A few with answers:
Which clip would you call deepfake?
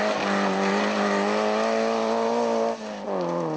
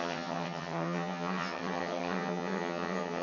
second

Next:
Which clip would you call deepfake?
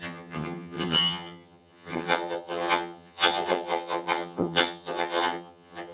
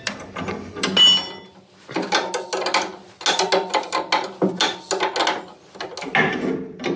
first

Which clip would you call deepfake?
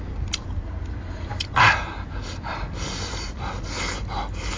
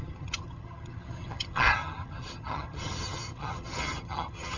second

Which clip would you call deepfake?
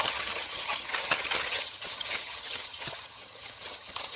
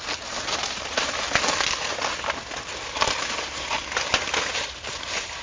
first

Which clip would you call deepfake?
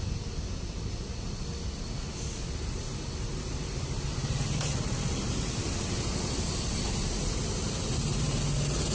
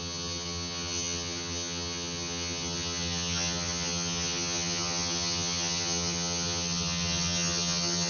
second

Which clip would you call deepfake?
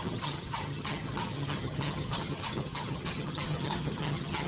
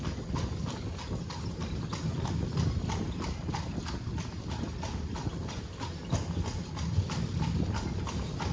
first